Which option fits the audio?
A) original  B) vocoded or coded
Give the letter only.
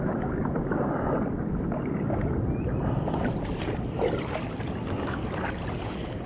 A